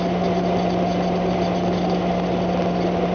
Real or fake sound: real